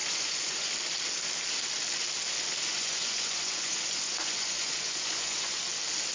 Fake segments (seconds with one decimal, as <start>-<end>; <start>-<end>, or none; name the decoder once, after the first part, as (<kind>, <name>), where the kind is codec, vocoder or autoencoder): 0.0-0.7 (vocoder, Vocos); 2.7-5.6